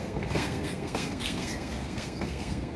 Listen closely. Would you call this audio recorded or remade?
remade